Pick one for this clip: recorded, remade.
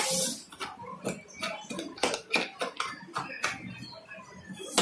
recorded